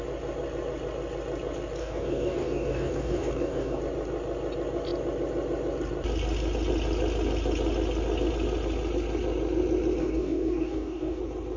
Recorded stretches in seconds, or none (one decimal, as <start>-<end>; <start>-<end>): 0.0-1.8; 3.8-10.0; 11.2-11.6

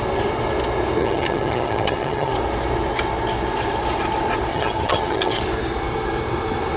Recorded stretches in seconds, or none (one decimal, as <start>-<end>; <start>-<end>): 0.0-1.0; 2.3-4.5; 5.4-6.8

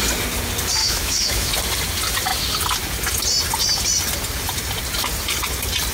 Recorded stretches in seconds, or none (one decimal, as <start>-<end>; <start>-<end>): 0.0-0.8; 1.5-5.9

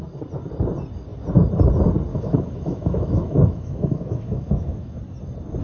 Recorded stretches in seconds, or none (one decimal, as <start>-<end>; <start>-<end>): 0.0-2.1; 5.0-5.6

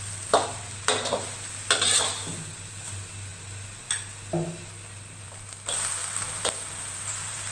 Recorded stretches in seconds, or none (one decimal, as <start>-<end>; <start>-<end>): 0.0-6.0